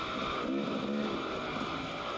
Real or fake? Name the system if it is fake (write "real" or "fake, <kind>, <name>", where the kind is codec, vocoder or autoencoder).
real